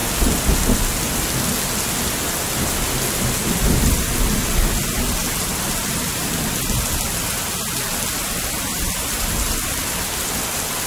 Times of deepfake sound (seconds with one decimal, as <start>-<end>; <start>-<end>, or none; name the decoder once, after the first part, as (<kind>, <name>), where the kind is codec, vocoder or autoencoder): none